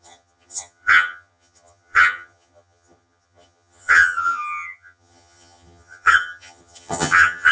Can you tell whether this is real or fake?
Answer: fake